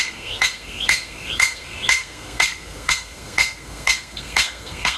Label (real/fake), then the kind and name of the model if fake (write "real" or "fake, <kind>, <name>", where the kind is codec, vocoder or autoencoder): fake, codec, SNAC